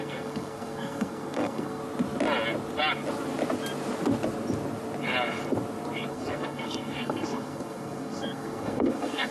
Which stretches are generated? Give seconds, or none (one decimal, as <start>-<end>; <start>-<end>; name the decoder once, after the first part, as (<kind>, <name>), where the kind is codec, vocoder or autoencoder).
0.0-1.8 (codec, SNAC); 6.1-9.3